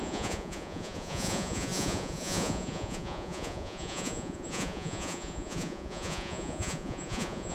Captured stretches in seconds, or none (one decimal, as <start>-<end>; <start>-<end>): none